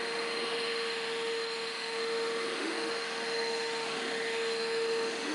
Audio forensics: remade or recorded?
remade